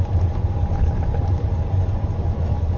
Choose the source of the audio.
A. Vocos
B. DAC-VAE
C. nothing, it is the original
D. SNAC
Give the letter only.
C